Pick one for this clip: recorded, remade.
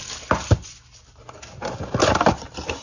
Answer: recorded